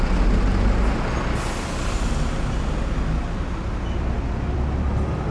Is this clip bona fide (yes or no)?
yes